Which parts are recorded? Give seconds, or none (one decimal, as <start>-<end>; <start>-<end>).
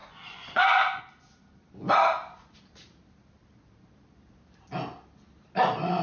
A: 1.0-6.0